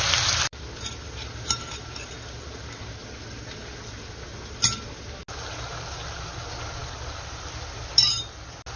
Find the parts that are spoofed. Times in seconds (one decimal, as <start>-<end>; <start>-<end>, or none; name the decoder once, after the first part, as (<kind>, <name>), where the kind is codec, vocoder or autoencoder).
none